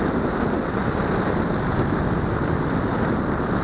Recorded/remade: recorded